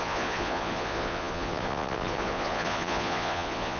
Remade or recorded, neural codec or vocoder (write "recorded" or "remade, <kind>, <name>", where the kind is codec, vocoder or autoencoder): remade, vocoder, Vocos